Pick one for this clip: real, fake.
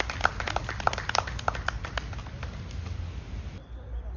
real